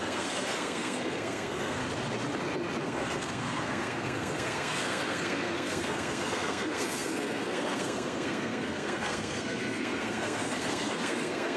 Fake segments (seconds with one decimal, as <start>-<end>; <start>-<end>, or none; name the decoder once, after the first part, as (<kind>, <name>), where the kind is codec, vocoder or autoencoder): 0.0-1.8 (codec, SNAC); 2.8-11.6